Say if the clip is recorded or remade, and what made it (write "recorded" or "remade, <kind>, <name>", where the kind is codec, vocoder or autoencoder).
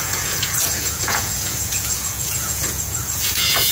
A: remade, vocoder, Vocos